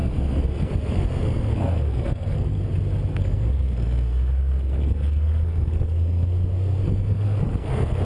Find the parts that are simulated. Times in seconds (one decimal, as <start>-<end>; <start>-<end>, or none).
0.0-2.7; 3.1-8.0